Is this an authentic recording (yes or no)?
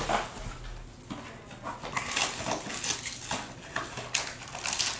yes